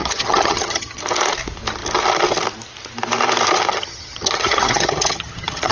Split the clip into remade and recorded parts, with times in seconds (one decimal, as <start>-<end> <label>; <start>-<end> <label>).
0.0-1.0 remade; 1.0-3.7 recorded; 3.7-5.7 remade